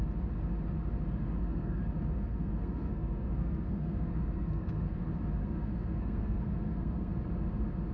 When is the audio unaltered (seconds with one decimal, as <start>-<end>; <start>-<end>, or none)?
0.0-1.2; 1.8-2.3; 5.0-5.4; 7.1-7.9